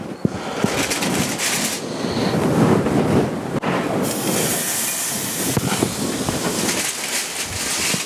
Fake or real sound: real